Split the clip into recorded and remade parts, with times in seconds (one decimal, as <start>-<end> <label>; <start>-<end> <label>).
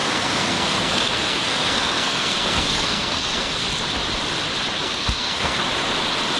0.0-3.6 remade; 3.6-4.8 recorded; 4.8-5.6 remade; 5.6-6.4 recorded